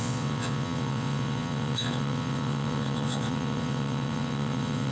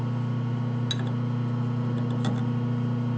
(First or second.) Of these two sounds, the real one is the second